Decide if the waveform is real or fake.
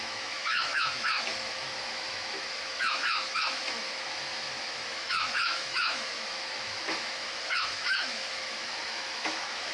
fake